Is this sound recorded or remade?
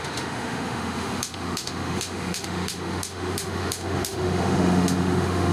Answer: remade